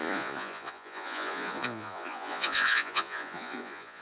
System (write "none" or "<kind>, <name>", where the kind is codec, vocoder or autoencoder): vocoder, Vocos